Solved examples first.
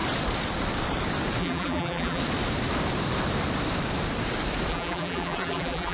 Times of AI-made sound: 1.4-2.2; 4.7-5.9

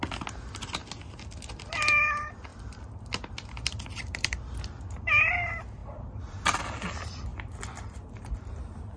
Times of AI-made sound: 2.5-4.6; 5.8-6.6

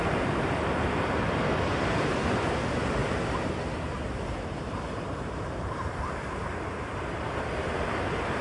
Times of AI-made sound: 3.0-6.0

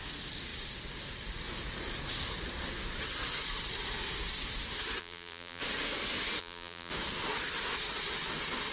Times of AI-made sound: 5.0-5.6; 6.4-6.9